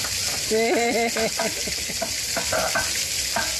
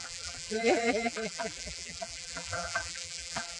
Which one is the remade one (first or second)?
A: second